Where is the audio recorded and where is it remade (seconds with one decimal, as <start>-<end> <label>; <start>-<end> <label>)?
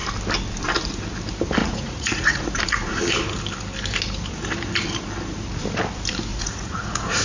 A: 0.0-1.6 recorded; 1.6-3.0 remade; 3.0-6.3 recorded; 6.3-7.2 remade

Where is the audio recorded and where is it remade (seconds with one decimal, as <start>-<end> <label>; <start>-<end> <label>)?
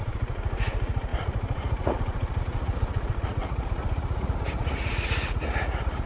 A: 0.0-6.1 remade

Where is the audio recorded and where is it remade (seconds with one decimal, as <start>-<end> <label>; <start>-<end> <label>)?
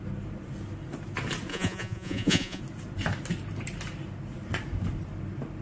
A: 0.0-1.5 recorded; 1.5-2.6 remade; 2.6-5.6 recorded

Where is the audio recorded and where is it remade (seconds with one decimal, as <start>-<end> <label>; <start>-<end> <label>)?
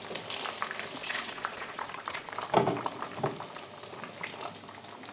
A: 0.0-1.0 recorded; 1.0-2.3 remade; 2.3-5.1 recorded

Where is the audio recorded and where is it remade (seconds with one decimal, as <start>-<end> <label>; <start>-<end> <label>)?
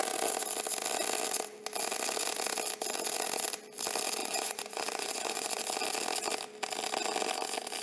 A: 0.0-4.2 recorded; 4.2-5.6 remade; 5.6-7.8 recorded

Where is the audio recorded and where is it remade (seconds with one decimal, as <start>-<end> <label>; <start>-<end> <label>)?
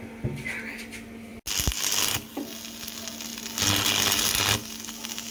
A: 0.0-5.3 recorded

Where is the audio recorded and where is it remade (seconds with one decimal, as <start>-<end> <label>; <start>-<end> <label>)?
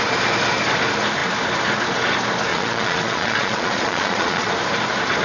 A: 0.0-2.5 recorded; 2.5-4.5 remade; 4.5-5.2 recorded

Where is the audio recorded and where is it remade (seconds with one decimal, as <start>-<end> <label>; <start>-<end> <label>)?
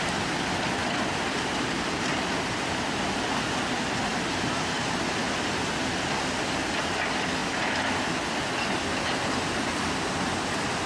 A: 0.0-10.9 recorded